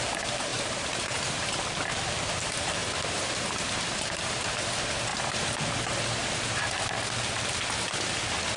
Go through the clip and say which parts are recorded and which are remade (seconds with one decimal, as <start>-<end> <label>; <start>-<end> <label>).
0.0-0.5 recorded; 0.5-1.6 remade; 1.6-2.8 recorded; 2.8-4.6 remade; 4.6-5.1 recorded; 5.1-5.6 remade; 5.6-8.6 recorded